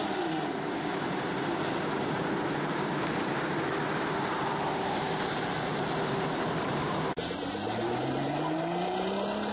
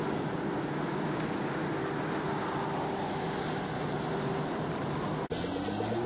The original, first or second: second